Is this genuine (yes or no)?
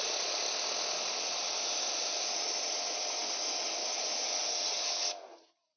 yes